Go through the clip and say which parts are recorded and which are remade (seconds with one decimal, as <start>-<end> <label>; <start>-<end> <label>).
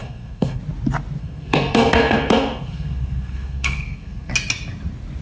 0.0-0.6 remade; 0.6-1.2 recorded; 1.2-4.3 remade; 4.3-5.2 recorded